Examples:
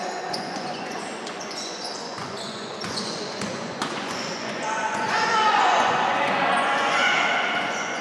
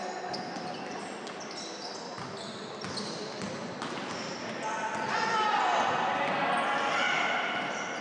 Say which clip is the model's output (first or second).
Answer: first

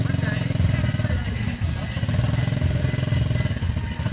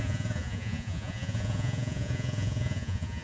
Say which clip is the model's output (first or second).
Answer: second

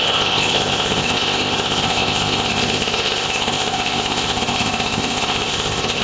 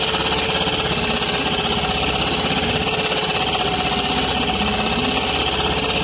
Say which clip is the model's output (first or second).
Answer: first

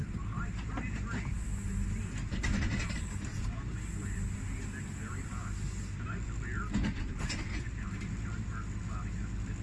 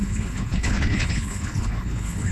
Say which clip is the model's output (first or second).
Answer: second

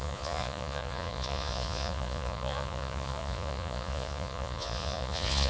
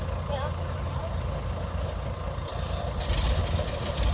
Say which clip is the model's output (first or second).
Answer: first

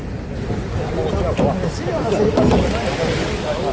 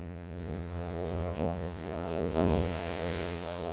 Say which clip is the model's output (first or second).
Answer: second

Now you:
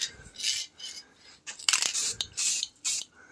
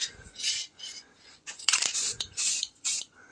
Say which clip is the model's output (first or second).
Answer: second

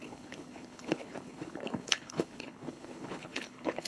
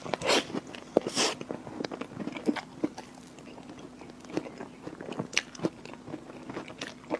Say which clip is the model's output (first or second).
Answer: first